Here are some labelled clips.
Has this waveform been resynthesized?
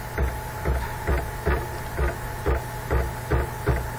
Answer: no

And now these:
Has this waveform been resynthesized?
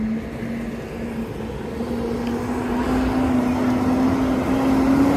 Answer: no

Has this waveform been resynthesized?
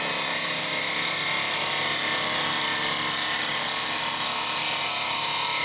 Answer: no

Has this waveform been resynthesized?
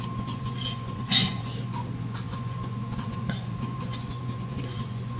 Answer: yes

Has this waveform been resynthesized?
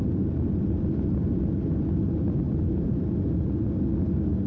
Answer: no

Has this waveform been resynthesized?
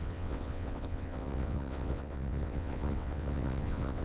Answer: yes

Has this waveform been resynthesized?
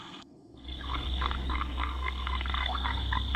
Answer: yes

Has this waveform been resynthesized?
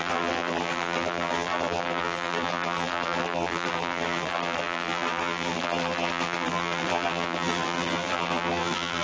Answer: yes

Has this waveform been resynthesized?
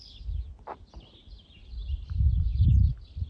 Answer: no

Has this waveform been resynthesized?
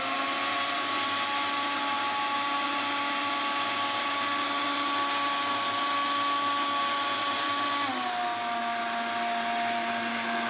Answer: no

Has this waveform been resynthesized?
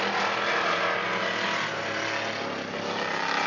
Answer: no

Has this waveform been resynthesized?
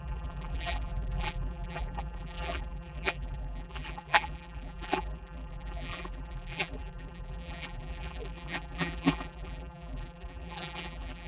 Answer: yes